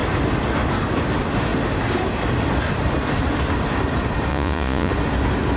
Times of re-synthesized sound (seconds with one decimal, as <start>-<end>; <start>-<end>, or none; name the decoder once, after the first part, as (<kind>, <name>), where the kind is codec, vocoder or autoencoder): 4.3-4.9 (vocoder, Vocos)